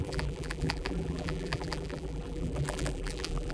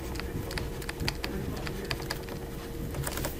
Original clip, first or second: second